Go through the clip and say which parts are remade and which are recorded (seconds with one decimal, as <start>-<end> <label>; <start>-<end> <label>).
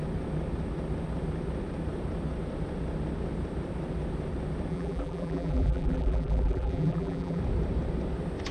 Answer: 0.0-4.7 recorded; 4.7-7.4 remade; 7.4-8.5 recorded